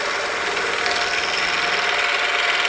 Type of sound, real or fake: real